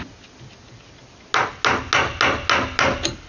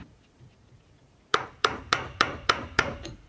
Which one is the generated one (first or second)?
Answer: second